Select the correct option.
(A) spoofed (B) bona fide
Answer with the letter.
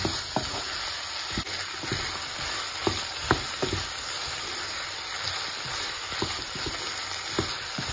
B